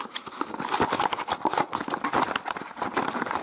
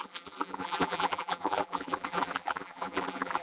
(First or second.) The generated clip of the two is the second